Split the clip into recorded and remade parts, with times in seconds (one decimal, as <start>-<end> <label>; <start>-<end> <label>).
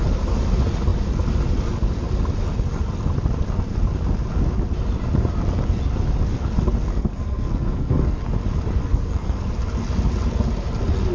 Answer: 0.0-6.9 recorded; 6.9-8.2 remade; 8.2-8.8 recorded; 8.8-9.4 remade; 9.4-11.1 recorded